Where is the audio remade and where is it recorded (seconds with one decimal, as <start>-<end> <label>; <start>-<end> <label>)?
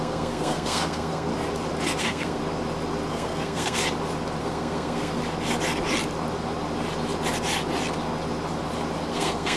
0.0-1.3 remade; 1.3-2.0 recorded; 2.0-2.4 remade; 2.4-3.1 recorded; 3.1-3.8 remade; 3.8-4.4 recorded; 4.4-5.2 remade; 5.2-9.1 recorded; 9.1-9.6 remade